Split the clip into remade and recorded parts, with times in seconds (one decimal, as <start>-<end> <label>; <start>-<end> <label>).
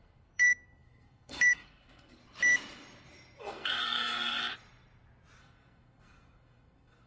0.0-2.2 remade; 2.2-3.4 recorded; 3.4-4.4 remade; 4.4-5.4 recorded; 5.4-7.1 remade